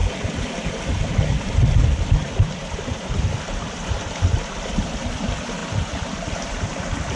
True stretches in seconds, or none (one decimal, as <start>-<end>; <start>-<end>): none